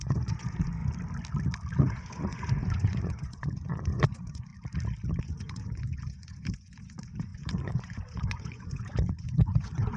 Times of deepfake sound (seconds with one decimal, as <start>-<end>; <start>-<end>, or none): 0.0-0.8; 1.8-4.5; 5.2-10.0